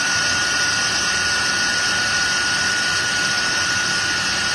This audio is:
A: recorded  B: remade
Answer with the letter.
B